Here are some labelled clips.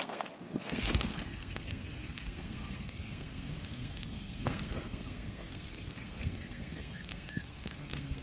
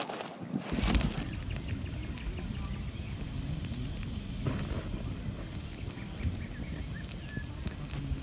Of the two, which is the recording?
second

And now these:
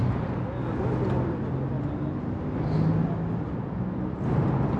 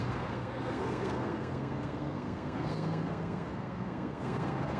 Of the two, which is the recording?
first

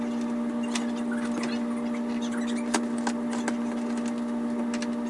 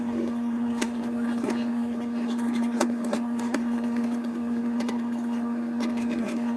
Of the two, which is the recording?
first